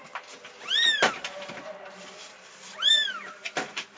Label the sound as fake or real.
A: real